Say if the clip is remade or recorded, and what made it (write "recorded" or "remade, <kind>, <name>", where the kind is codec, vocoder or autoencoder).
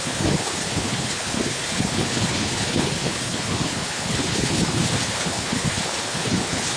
remade, codec, HILCodec